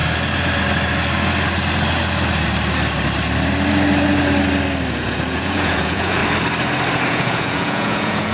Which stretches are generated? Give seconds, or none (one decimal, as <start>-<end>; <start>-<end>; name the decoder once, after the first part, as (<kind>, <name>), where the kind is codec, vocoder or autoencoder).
4.9-6.2 (vocoder, Vocos); 7.1-8.3